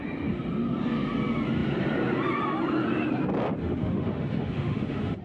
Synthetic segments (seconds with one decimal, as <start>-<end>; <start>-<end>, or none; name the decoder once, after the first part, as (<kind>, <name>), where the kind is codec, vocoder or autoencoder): 3.6-5.2 (autoencoder, DAC-VAE)